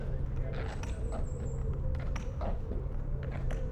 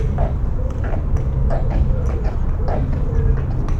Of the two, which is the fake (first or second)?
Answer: second